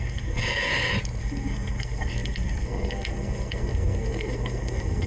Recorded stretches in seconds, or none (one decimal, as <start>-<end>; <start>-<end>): 0.7-1.2